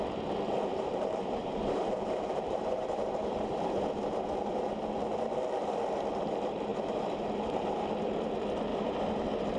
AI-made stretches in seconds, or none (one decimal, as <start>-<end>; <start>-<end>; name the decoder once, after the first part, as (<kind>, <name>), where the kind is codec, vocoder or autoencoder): 0.7-4.0 (vocoder, BigVGAN v2); 6.7-7.9; 8.7-9.2